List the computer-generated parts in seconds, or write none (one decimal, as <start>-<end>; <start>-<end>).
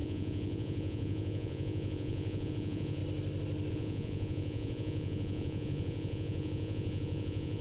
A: 0.0-3.0; 3.7-7.6